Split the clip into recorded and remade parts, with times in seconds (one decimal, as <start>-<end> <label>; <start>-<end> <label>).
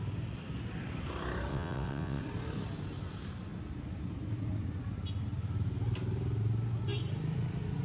0.0-1.5 recorded; 1.5-2.2 remade; 2.2-7.8 recorded